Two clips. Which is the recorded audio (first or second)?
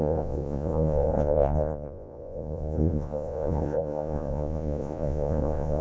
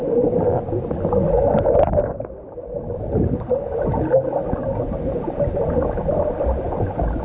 second